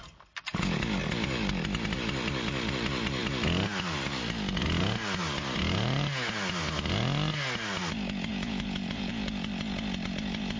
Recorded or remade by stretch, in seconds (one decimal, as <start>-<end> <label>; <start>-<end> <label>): 0.0-8.3 recorded; 8.3-9.1 remade; 9.1-10.6 recorded